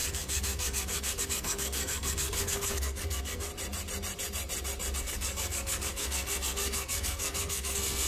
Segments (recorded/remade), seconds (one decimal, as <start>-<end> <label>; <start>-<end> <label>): 0.0-3.5 remade; 3.5-5.0 recorded; 5.0-8.1 remade